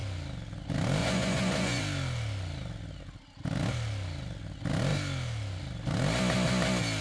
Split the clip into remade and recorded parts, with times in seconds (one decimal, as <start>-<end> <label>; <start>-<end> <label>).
0.0-1.0 recorded; 1.0-1.8 remade; 1.8-7.0 recorded